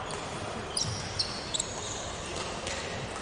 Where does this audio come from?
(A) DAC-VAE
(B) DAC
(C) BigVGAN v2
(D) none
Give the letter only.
D